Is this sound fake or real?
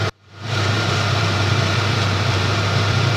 fake